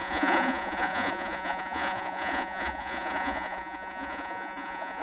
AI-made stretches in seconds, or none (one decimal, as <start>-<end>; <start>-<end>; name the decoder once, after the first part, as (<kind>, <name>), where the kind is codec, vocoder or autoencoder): 0.0-5.0 (vocoder, Vocos)